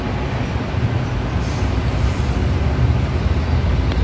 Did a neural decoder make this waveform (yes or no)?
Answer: no